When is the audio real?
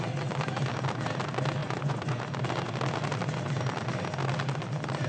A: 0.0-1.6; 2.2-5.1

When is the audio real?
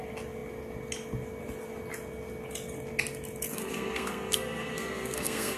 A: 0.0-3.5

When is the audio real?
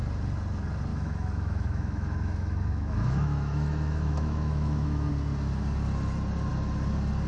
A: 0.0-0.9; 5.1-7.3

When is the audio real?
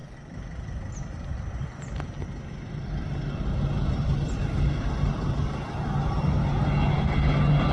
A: 0.0-7.7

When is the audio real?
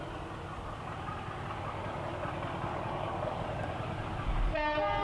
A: 0.0-2.7; 3.4-5.0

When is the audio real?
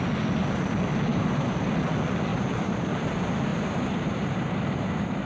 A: 0.0-1.1; 1.7-2.3; 2.9-3.5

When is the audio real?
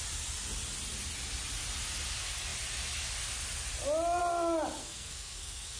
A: 0.0-4.8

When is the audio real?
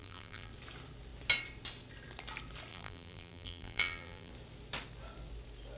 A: 0.5-2.7; 4.3-5.8